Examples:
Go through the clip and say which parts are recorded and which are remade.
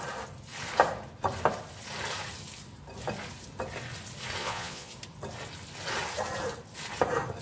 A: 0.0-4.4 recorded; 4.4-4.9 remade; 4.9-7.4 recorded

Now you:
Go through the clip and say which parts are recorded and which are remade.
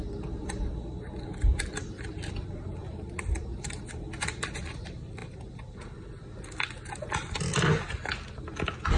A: 0.0-9.0 recorded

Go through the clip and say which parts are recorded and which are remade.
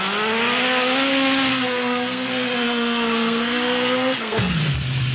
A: 0.0-1.5 recorded; 1.5-4.6 remade; 4.6-5.1 recorded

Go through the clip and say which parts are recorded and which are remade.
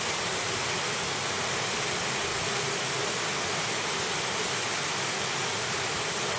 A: 0.0-6.4 recorded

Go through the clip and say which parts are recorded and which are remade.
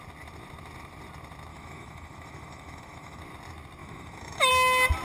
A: 0.0-1.5 recorded; 1.5-3.2 remade; 3.2-3.8 recorded; 3.8-4.5 remade; 4.5-5.0 recorded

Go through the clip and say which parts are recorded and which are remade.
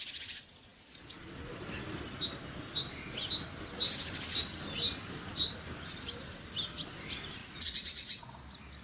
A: 0.0-7.4 recorded; 7.4-8.2 remade; 8.2-8.8 recorded